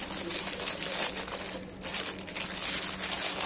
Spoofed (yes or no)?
no